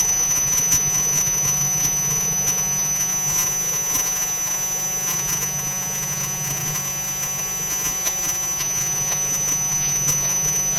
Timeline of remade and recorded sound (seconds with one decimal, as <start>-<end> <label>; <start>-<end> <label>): 0.0-10.8 remade